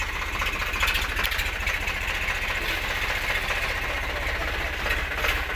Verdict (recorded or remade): recorded